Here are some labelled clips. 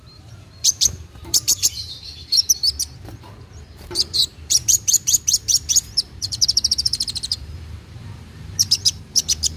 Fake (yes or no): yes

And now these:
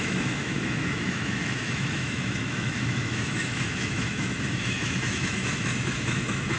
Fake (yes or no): yes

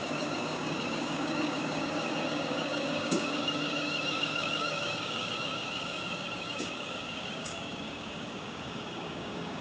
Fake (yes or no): yes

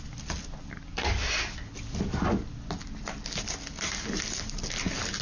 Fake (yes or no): no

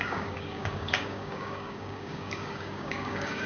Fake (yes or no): yes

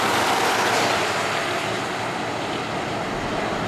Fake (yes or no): no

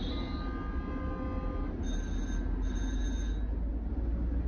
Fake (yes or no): no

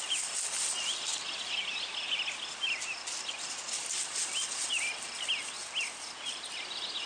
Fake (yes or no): no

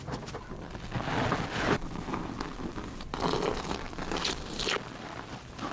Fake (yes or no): no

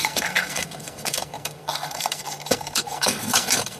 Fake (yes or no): yes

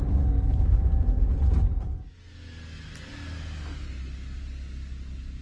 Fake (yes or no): no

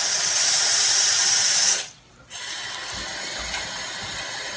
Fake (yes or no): no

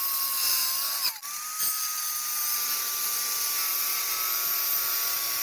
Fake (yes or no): no